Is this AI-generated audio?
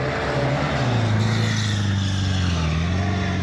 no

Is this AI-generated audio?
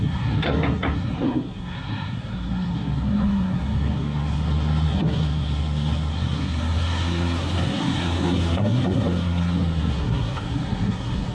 yes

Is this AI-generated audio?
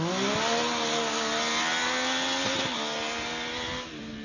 no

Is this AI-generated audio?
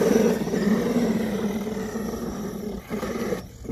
no